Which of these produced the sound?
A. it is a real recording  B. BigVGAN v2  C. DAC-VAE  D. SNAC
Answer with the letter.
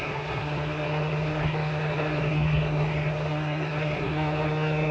D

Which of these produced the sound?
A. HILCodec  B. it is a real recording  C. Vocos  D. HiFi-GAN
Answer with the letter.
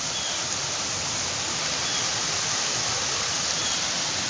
B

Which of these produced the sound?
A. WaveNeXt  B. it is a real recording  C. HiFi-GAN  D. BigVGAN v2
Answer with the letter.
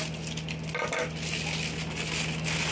B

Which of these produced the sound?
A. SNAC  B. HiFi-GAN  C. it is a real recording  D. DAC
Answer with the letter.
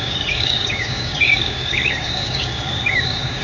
D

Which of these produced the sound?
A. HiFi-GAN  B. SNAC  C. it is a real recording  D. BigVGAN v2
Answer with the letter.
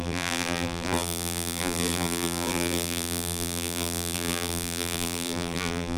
D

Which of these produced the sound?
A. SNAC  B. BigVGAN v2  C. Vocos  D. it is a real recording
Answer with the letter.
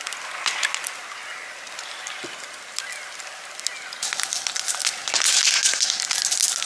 D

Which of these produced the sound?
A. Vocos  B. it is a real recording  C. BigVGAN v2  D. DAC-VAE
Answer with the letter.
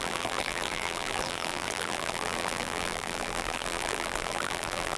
C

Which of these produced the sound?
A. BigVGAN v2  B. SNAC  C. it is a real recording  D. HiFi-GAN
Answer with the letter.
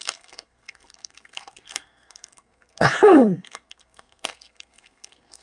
B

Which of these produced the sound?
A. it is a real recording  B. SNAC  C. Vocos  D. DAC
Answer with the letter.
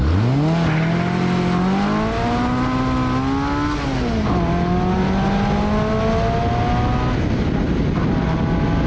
A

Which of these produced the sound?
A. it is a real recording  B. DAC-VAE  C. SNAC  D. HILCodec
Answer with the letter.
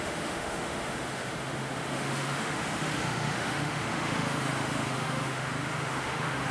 B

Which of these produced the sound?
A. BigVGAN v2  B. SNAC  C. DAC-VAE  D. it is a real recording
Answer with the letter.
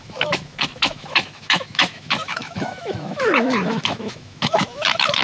C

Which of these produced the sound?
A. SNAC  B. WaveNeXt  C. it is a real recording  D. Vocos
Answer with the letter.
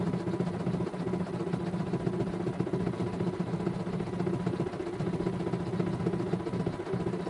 C